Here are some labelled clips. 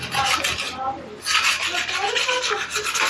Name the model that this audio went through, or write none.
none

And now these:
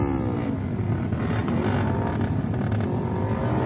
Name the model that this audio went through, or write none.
none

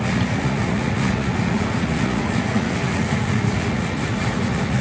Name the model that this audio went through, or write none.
vocoder, Vocos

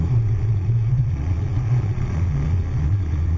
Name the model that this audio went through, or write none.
vocoder, Vocos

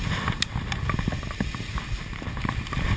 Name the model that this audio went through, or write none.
none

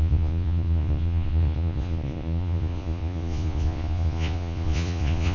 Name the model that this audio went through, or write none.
vocoder, Vocos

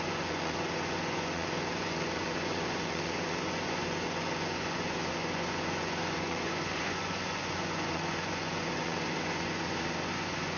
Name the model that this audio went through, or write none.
vocoder, Vocos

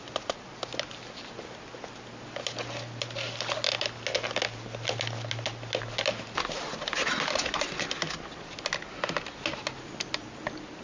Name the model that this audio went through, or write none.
none